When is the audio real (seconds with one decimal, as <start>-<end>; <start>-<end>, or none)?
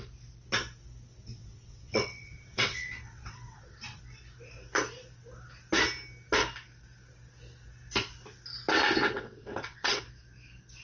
0.0-1.1; 4.0-9.0; 10.0-10.8